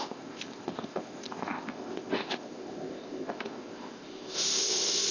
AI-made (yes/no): yes